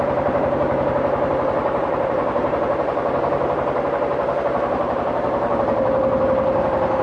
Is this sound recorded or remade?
remade